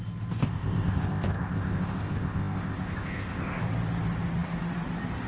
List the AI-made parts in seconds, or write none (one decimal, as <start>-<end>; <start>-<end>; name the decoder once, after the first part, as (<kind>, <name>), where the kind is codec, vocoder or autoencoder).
0.4-3.6 (codec, ZipCodec)

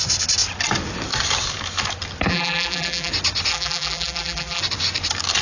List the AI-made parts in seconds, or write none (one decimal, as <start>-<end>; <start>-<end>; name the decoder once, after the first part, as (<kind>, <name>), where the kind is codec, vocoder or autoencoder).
2.3-3.1 (vocoder, BigVGAN v2); 3.5-4.6

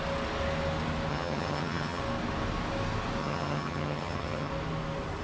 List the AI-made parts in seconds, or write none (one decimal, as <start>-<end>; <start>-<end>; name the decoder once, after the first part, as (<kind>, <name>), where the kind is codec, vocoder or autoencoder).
1.1-2.0 (vocoder, HiFi-GAN); 3.2-4.5

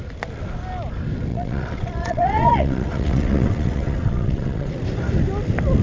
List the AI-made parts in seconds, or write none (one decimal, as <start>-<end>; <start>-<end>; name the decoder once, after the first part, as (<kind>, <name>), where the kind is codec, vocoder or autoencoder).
1.3-4.7 (vocoder, WaveNeXt)

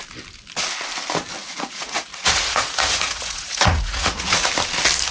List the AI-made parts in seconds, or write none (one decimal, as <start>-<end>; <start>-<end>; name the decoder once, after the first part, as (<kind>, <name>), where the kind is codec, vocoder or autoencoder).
1.4-4.5 (vocoder, Vocos)

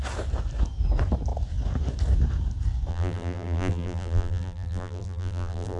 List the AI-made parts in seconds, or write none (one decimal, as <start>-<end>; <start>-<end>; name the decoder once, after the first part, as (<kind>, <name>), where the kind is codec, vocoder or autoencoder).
2.9-5.8 (vocoder, BigVGAN v2)